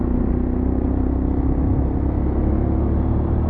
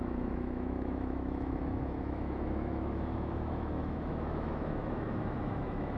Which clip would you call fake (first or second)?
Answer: second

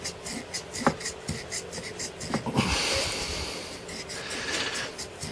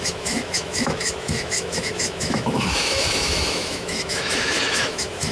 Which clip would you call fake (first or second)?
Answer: second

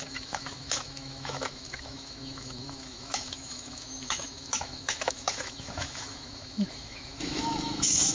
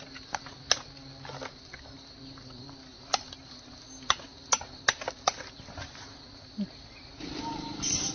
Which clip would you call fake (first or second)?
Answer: first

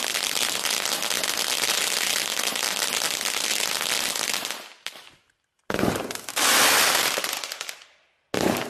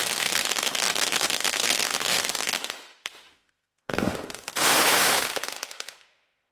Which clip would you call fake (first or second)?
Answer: second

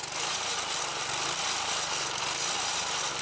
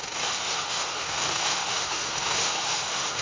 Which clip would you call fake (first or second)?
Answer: second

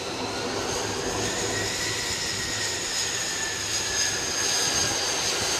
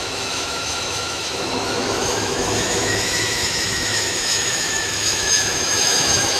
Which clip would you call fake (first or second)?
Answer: second